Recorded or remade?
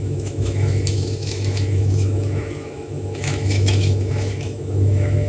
remade